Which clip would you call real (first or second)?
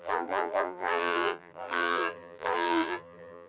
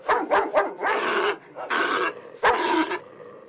second